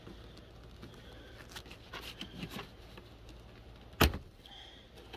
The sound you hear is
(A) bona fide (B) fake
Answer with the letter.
A